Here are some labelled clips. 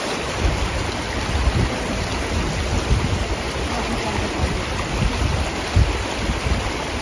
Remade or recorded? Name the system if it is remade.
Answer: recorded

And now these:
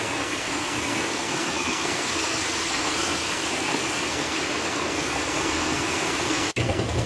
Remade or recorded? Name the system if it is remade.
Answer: remade, codec, SNAC